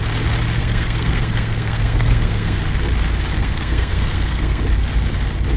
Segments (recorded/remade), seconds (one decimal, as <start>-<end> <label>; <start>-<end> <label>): 0.0-0.6 recorded; 0.6-2.6 remade; 2.6-3.4 recorded; 3.4-4.6 remade; 4.6-5.6 recorded